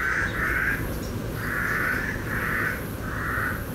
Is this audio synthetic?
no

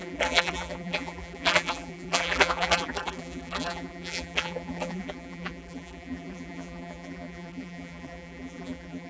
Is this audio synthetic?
yes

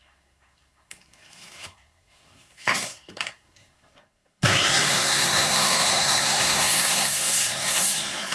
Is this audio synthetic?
yes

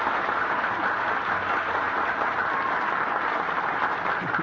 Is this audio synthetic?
no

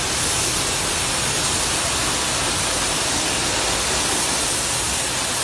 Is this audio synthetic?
no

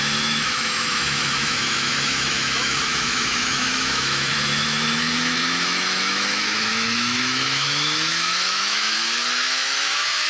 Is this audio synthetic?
yes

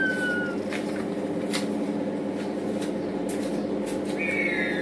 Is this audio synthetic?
no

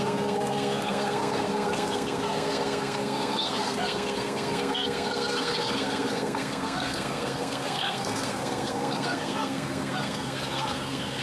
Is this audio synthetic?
yes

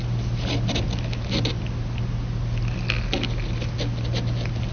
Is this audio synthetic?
no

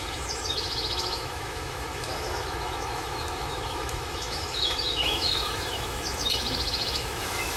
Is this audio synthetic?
yes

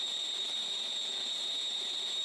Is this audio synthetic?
no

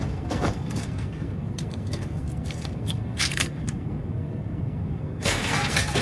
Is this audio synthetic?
yes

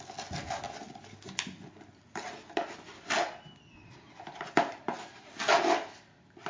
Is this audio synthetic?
no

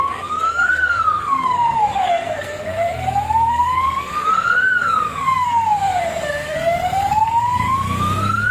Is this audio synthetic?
yes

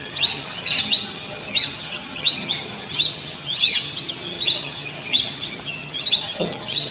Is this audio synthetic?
yes